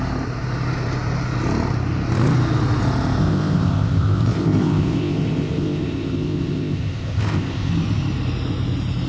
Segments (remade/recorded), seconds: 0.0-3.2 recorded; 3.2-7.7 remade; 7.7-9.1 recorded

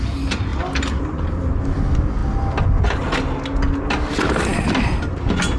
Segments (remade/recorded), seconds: 0.0-5.6 recorded

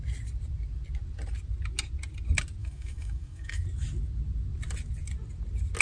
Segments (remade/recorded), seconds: 0.0-2.6 recorded; 2.6-3.6 remade; 3.6-5.8 recorded